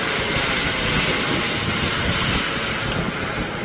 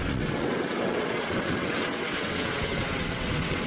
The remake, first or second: second